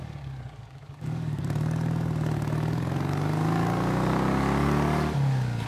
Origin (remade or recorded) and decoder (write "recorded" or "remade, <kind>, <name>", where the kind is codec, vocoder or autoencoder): remade, codec, DAC